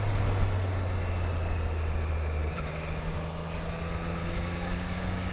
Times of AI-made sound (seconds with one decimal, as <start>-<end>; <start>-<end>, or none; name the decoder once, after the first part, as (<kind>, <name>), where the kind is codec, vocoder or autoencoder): 2.4-3.2 (codec, DAC); 4.2-5.3